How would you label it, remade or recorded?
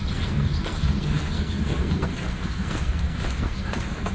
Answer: remade